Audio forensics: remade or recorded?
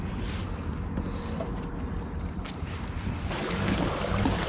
recorded